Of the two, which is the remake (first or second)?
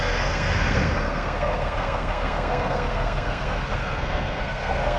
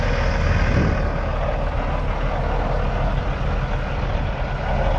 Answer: first